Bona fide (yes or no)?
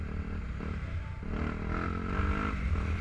yes